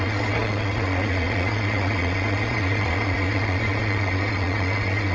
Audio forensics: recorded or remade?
remade